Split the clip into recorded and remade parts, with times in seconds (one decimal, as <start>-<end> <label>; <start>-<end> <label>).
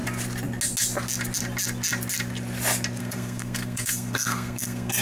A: 0.0-3.0 recorded; 3.0-5.0 remade